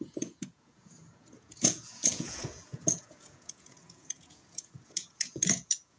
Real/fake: fake